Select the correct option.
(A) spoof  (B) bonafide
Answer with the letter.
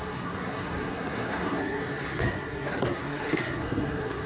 A